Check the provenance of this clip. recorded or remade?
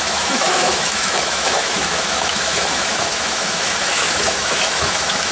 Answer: remade